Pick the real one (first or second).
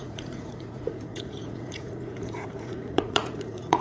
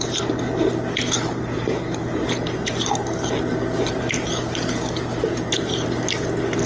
second